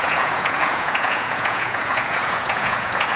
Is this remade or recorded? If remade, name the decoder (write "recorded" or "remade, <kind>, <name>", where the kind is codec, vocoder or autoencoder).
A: remade, vocoder, Vocos